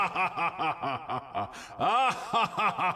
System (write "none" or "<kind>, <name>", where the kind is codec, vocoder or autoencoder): none